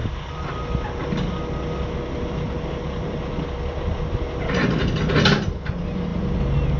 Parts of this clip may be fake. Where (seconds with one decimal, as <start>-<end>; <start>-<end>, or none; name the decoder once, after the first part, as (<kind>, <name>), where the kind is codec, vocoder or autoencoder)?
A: none

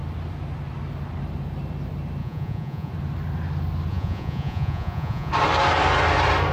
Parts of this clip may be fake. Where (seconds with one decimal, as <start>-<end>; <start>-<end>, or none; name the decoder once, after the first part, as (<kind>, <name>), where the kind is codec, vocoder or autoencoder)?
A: 2.2-2.9 (vocoder, Vocos); 3.9-5.3

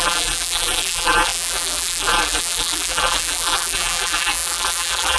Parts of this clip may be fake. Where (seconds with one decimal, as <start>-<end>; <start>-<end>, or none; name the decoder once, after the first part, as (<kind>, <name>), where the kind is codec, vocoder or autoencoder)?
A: 0.0-5.2 (vocoder, BigVGAN v2)

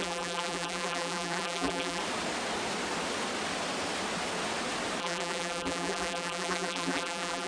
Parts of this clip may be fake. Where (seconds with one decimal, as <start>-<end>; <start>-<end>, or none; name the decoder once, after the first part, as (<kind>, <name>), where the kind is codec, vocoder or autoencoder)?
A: 0.0-2.0 (vocoder, BigVGAN v2); 5.0-7.5

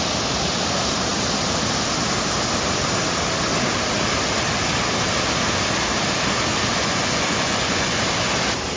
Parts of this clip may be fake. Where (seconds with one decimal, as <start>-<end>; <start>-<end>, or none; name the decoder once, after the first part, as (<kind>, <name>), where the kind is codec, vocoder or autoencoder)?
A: 6.7-8.0 (vocoder, Vocos)

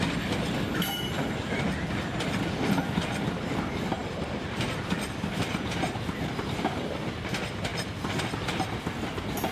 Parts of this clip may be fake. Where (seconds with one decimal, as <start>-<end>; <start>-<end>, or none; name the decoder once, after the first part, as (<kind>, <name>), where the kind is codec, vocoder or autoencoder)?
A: none